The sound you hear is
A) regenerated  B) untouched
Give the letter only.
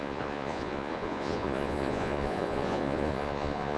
A